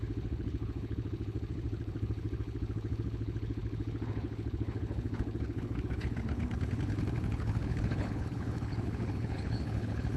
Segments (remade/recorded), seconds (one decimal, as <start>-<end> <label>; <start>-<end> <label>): 0.0-10.2 remade